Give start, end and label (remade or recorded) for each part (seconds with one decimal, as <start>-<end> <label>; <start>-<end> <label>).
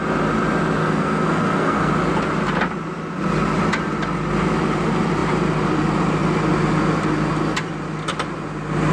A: 0.0-0.8 recorded; 0.8-1.9 remade; 1.9-8.9 recorded